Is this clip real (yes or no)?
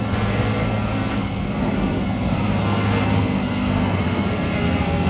no